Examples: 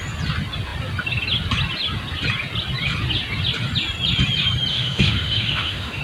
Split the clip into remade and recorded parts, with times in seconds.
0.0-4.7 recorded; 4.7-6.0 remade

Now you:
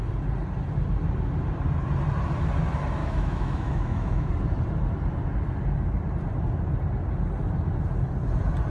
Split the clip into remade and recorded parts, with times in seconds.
0.0-3.0 recorded; 3.0-4.3 remade; 4.3-8.7 recorded

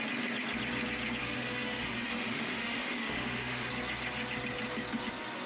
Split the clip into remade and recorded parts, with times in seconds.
0.0-1.2 recorded; 1.2-3.7 remade; 3.7-5.5 recorded

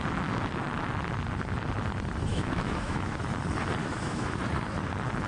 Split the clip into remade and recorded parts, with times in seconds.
0.0-2.3 recorded; 2.3-3.2 remade; 3.2-3.8 recorded; 3.8-4.4 remade; 4.4-5.3 recorded

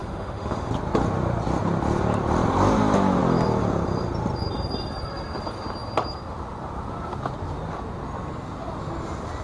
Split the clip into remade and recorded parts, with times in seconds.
0.0-0.7 remade; 0.7-9.4 recorded

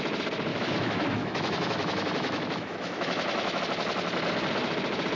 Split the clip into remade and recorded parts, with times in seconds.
0.0-0.5 recorded; 0.5-3.6 remade; 3.6-5.2 recorded